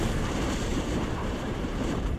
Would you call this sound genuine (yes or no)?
no